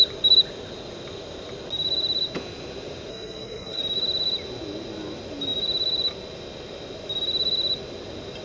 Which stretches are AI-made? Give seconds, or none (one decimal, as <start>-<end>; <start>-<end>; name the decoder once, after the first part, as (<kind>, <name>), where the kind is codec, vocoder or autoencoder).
3.1-3.8 (codec, SNAC)